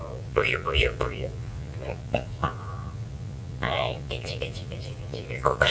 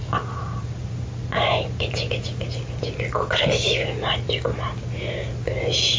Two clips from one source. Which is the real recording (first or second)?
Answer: second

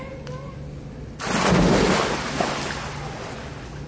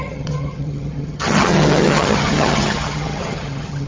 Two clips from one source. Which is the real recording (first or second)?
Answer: first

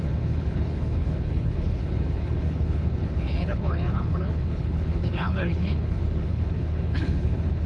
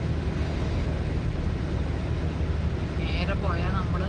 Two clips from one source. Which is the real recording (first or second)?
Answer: second